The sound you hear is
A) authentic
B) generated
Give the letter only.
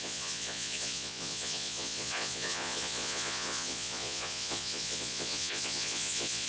B